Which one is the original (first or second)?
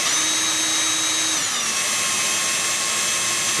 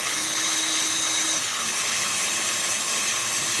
first